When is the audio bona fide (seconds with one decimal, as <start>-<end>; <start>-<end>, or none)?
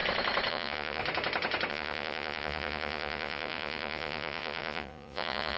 0.0-0.5; 1.0-1.7